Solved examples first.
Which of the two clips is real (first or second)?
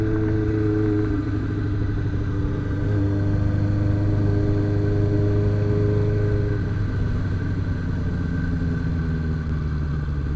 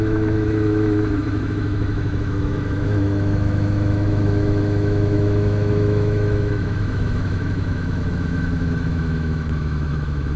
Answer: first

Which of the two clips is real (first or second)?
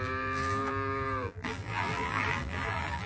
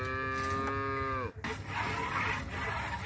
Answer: second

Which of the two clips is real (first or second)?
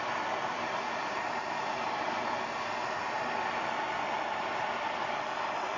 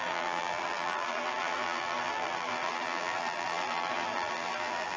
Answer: first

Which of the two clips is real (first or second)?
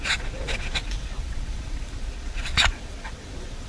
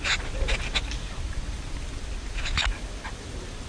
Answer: second